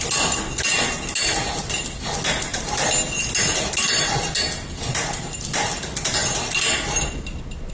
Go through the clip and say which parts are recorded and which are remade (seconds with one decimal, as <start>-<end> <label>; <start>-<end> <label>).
0.0-7.7 recorded